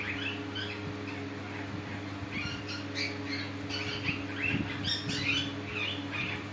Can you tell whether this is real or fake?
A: real